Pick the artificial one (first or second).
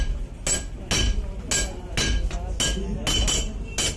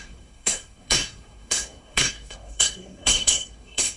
second